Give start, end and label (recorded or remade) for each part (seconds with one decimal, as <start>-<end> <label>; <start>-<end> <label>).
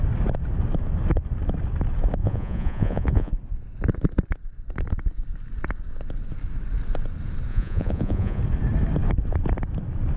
0.0-2.2 recorded; 2.2-3.3 remade; 3.3-7.5 recorded; 7.5-8.4 remade; 8.4-10.2 recorded